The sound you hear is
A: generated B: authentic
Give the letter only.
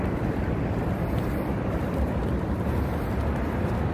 B